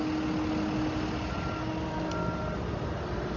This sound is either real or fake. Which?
real